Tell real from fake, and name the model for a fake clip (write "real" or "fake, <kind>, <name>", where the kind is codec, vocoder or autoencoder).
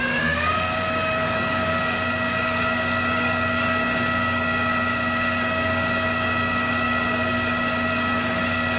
fake, codec, DAC